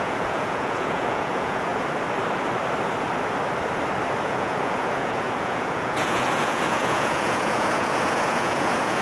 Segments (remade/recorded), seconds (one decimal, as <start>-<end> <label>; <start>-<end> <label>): 0.0-1.7 remade; 1.7-4.2 recorded; 4.2-9.0 remade